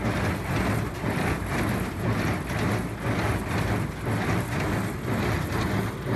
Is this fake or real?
real